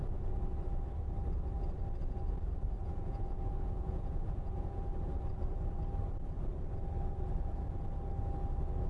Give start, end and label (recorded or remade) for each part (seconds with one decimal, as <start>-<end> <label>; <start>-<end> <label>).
0.0-2.8 recorded; 2.8-4.8 remade; 4.8-8.9 recorded